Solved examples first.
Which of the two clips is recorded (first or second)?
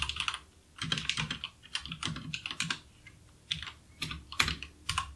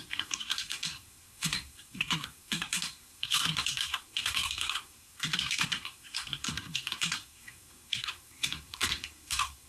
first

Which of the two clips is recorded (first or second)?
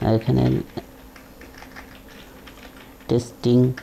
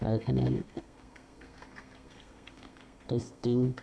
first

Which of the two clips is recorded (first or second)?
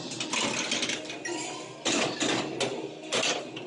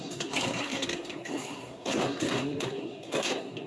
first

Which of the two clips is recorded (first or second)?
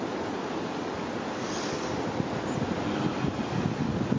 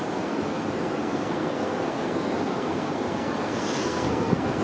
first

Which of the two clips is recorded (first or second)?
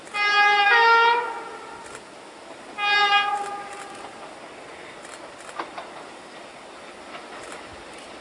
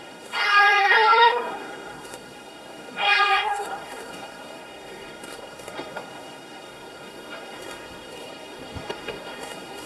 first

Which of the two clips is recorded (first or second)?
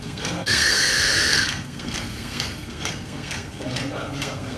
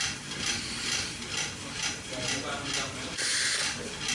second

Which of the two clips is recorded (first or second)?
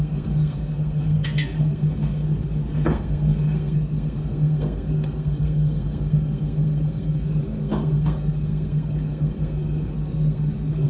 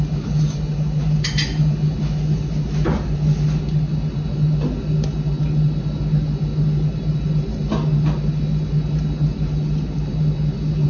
second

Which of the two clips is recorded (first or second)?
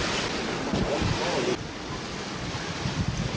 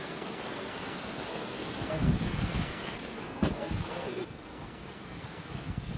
first